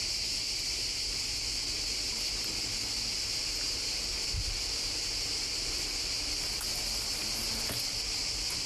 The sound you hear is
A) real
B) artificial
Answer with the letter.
A